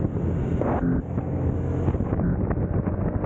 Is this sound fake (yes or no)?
no